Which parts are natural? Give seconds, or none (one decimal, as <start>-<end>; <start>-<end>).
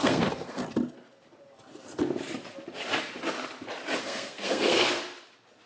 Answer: 0.6-4.0; 5.0-5.7